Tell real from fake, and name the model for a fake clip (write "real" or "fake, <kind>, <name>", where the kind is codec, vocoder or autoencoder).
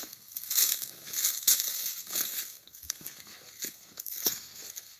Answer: fake, codec, SNAC